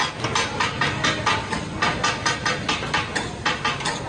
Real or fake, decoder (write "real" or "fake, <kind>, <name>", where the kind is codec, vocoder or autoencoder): real